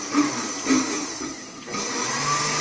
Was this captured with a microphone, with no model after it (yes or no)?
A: yes